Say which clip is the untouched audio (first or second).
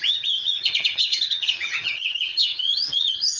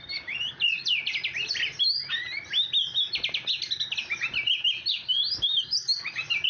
second